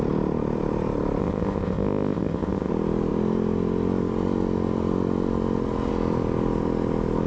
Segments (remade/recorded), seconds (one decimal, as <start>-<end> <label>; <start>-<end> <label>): 0.0-1.2 recorded; 1.2-2.7 remade; 2.7-7.3 recorded